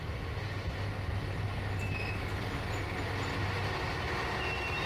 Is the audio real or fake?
real